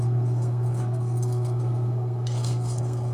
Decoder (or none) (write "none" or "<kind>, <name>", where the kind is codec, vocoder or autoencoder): codec, SNAC